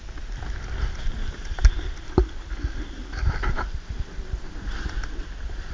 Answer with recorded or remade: recorded